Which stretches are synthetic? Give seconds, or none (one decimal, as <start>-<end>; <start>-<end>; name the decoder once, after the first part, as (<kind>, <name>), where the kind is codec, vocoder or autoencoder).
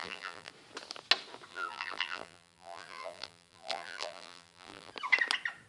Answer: 0.0-0.5 (vocoder, BigVGAN v2); 1.5-4.9